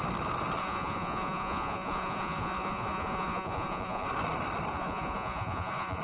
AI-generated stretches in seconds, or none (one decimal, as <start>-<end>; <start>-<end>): 0.6-4.1; 4.7-6.0

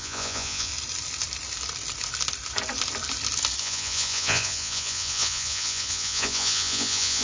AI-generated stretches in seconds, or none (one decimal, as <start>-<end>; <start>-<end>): 0.0-0.7; 3.6-7.2

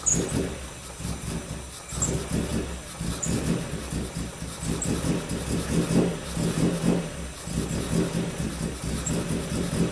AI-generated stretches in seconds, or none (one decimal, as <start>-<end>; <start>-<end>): none

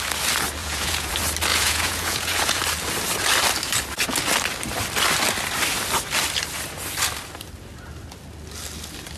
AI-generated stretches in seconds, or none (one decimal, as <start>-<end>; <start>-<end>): 0.6-1.1; 1.5-2.6

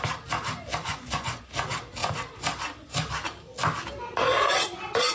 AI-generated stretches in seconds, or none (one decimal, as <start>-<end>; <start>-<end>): 0.8-1.4

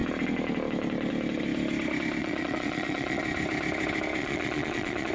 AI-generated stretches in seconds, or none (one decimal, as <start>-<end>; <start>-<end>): 2.2-3.2; 4.2-5.1

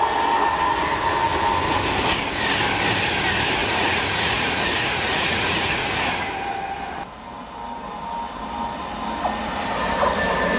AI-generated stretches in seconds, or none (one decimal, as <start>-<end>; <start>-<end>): 3.6-5.9

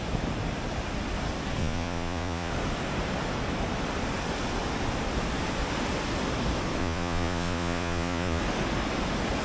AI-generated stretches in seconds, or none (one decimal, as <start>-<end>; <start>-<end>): 1.6-2.5; 6.8-8.4